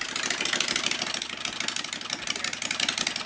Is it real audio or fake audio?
real